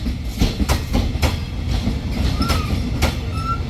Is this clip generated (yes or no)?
no